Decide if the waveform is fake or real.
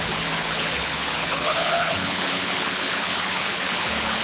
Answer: fake